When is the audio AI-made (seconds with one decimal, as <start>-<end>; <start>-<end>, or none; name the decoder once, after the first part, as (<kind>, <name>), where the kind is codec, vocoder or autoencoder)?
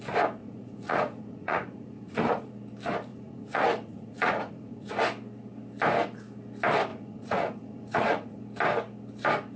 0.4-2.5 (vocoder, Vocos); 3.1-4.9; 6.9-8.4